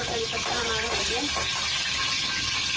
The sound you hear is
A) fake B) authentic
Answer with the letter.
B